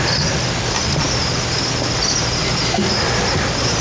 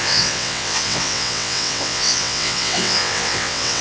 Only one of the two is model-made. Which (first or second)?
second